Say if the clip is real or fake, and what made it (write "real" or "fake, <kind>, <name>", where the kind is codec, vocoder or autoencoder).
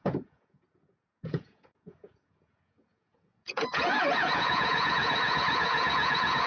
fake, vocoder, Vocos